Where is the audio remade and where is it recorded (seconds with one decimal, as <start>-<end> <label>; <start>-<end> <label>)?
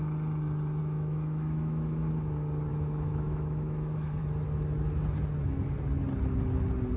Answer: 0.0-0.8 recorded; 0.8-2.1 remade; 2.1-2.7 recorded; 2.7-4.2 remade; 4.2-7.0 recorded